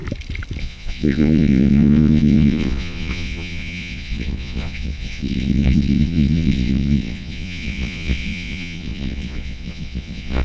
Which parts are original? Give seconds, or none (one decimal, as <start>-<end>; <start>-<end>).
0.0-0.6